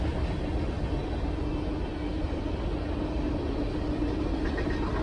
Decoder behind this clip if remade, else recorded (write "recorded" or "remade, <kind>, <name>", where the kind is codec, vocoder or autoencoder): recorded